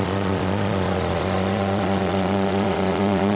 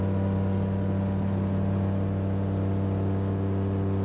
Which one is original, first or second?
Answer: second